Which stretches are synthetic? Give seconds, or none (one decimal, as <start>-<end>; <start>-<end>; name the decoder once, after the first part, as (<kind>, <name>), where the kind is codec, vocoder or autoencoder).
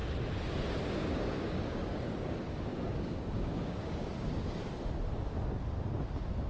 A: 1.1-4.1 (codec, DAC)